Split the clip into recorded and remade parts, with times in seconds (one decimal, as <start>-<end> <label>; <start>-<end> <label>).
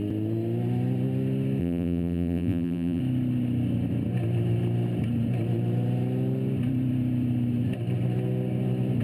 0.0-1.6 recorded; 1.6-3.0 remade; 3.0-9.0 recorded